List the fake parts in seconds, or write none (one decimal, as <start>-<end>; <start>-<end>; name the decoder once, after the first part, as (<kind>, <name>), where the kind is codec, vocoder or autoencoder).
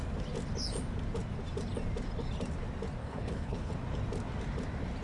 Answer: 3.0-3.7 (codec, HILCodec)